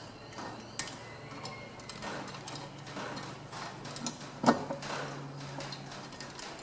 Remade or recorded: recorded